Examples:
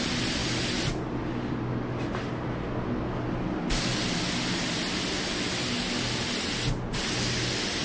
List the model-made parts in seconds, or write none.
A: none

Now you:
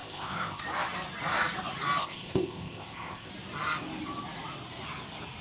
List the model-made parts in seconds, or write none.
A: 0.0-0.6 (codec, ZipCodec); 2.0-3.3